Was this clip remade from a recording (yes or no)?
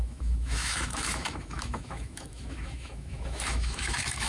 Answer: yes